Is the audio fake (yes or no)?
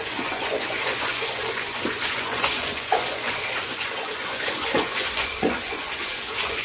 yes